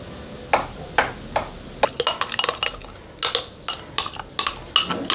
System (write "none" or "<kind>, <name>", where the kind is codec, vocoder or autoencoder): none